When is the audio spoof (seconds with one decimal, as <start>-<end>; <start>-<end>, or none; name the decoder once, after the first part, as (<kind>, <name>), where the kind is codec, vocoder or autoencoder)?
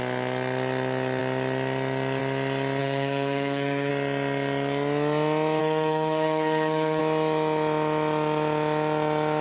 2.8-3.9 (codec, SNAC); 5.6-7.0